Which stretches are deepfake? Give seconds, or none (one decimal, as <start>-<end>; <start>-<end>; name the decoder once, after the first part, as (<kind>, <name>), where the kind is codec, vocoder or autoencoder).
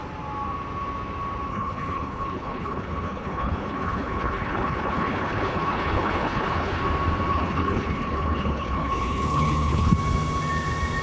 1.5-6.8 (codec, HILCodec); 7.3-9.9